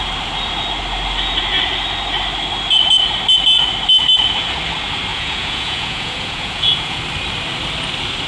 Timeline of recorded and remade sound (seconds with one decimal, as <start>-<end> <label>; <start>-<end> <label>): 0.0-5.1 recorded; 5.1-7.0 remade; 7.0-8.3 recorded